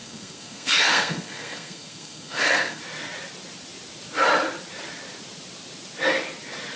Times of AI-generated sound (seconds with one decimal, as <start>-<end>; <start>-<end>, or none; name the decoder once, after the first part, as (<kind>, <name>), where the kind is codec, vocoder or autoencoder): 0.0-2.8 (codec, SNAC)